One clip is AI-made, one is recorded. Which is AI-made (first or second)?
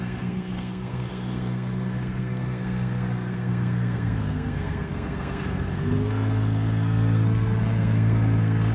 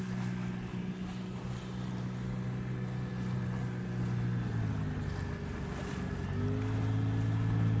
first